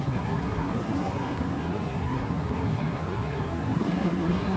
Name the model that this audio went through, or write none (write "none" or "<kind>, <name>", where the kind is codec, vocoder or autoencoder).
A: codec, SNAC